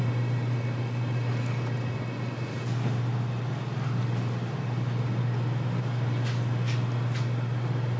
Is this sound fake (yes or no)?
no